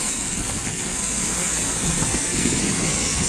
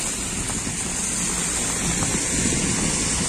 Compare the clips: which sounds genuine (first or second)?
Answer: second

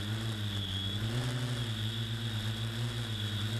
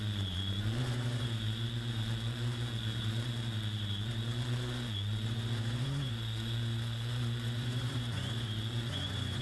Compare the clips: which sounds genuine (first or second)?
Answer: first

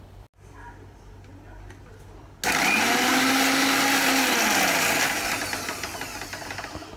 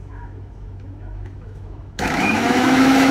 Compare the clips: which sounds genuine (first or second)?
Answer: first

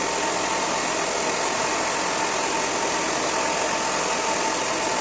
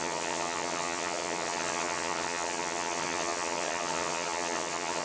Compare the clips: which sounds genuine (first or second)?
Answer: first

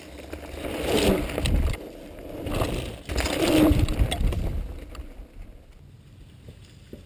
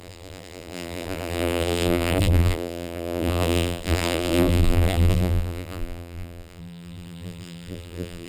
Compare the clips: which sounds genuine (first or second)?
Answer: first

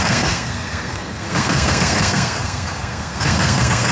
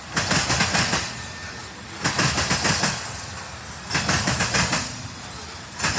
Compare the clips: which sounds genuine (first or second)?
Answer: second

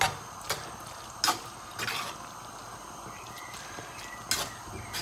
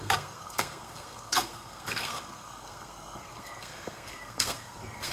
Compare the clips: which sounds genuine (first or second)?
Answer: first